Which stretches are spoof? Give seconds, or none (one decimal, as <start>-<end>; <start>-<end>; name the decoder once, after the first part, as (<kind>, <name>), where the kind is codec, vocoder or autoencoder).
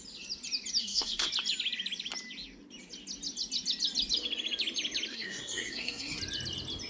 0.8-1.3 (codec, SNAC); 5.1-6.2